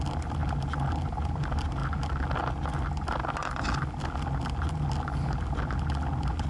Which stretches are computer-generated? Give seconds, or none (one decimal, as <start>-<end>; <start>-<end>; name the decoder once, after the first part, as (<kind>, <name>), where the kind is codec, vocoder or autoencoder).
none